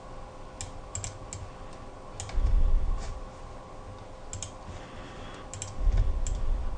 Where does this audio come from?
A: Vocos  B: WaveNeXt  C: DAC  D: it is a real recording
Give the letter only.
D